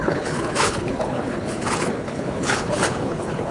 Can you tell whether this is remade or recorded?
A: remade